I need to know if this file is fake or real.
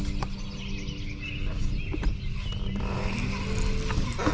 real